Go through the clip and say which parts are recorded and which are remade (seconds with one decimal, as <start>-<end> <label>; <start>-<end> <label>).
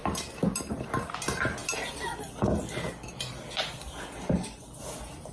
0.0-5.3 recorded